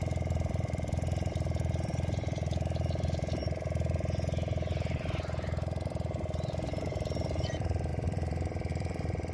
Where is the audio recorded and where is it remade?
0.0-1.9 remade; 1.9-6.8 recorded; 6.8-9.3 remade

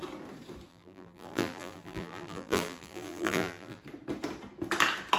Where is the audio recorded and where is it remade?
0.0-0.7 recorded; 0.7-3.8 remade; 3.8-5.2 recorded

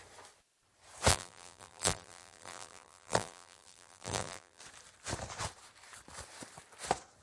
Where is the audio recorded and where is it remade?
0.0-1.1 recorded; 1.1-4.6 remade; 4.6-7.2 recorded

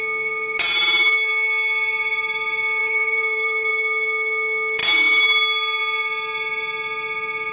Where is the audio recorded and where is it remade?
0.0-2.8 recorded; 2.8-3.7 remade; 3.7-7.5 recorded

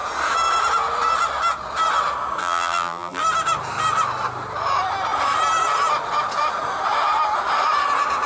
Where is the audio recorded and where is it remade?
0.0-2.4 recorded; 2.4-3.2 remade; 3.2-8.3 recorded